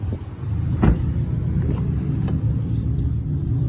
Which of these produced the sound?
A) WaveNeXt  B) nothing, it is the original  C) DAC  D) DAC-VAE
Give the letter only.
B